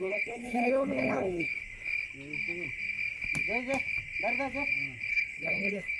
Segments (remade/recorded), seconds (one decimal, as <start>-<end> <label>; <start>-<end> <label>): 0.0-1.5 remade; 1.5-5.1 recorded; 5.1-6.0 remade